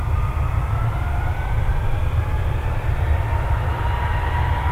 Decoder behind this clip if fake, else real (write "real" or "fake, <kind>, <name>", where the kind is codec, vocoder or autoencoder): real